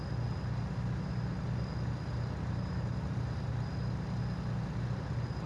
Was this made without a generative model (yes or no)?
yes